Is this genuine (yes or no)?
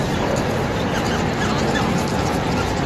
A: yes